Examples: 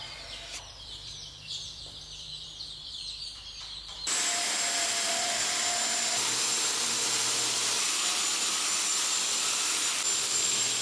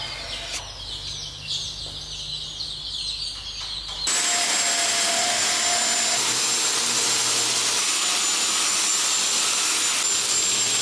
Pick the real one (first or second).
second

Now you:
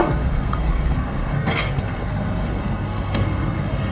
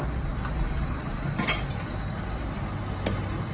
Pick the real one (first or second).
second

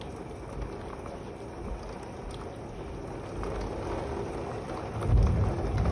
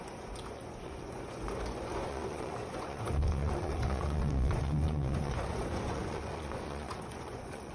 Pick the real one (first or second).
first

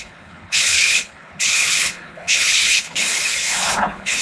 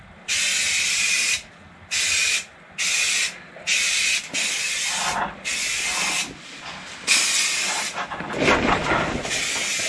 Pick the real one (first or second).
second